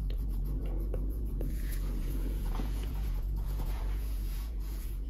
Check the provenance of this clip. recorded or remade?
remade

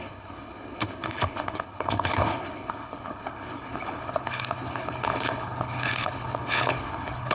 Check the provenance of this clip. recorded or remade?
remade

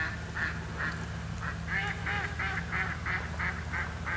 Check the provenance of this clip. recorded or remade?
recorded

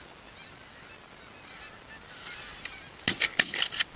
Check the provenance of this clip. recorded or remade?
recorded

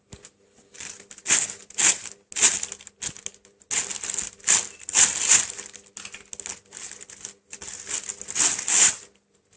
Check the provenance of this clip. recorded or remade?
recorded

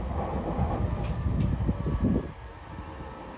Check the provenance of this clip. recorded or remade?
recorded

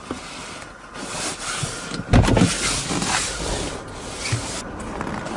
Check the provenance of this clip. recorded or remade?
recorded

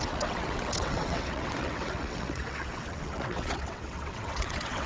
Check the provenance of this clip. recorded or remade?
remade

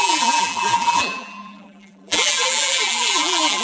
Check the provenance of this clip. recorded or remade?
remade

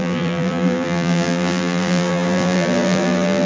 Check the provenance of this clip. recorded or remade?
remade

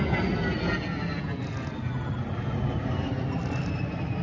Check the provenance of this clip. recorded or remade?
recorded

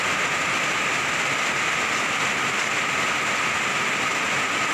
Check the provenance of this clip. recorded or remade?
recorded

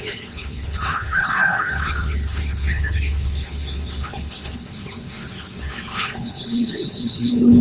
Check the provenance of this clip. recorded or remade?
remade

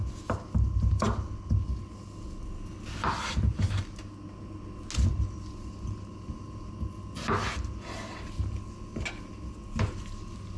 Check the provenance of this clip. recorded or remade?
recorded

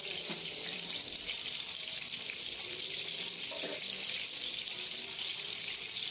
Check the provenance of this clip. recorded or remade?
remade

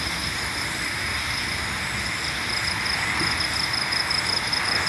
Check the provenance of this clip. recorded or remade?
recorded